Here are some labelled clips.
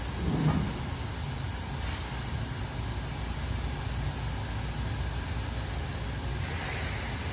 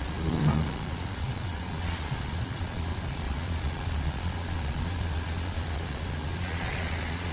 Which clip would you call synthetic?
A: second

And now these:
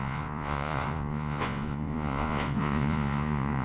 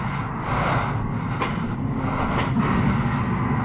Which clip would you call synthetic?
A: first